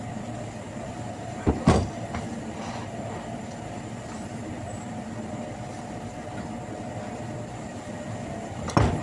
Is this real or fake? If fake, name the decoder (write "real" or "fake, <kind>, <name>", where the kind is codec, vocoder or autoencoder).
real